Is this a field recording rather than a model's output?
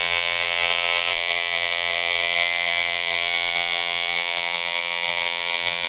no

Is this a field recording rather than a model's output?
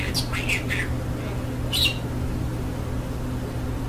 yes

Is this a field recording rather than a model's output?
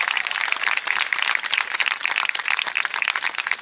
no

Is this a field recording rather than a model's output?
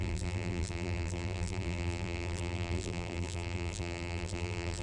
no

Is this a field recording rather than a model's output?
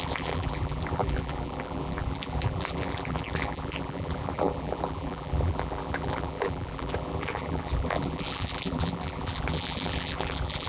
no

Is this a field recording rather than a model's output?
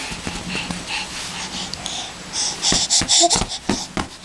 yes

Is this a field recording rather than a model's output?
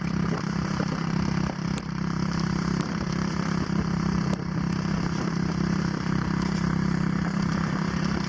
no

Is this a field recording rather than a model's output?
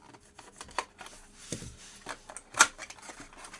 yes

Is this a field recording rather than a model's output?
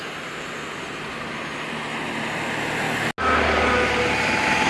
yes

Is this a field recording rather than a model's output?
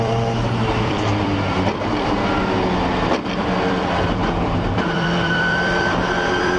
no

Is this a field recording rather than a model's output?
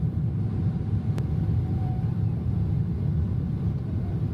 no